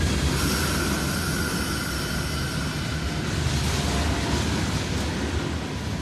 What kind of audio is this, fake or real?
real